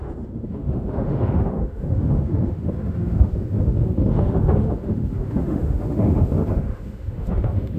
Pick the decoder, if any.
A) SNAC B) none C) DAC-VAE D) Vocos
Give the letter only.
C